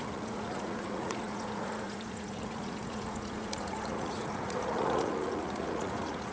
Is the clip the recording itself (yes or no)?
no